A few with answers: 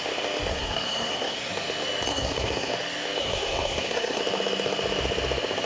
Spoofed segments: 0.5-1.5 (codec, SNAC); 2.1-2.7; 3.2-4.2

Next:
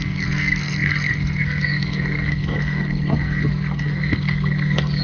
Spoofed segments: 0.0-5.0 (codec, SNAC)

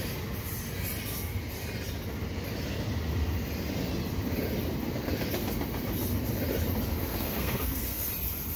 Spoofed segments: 7.1-8.1 (codec, SNAC)

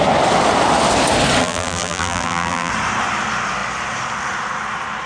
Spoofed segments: 1.4-2.7 (vocoder, BigVGAN v2)

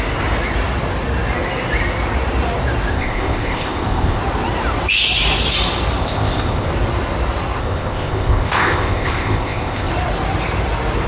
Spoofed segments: 2.9-4.2 (codec, ZipCodec); 6.0-6.7; 7.6-9.9

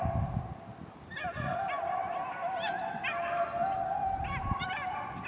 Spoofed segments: none

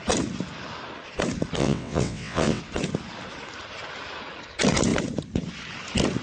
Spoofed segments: 1.6-2.6 (vocoder, WaveNeXt)

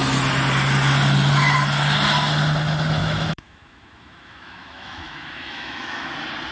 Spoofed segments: 3.0-6.1 (autoencoder, DAC-VAE)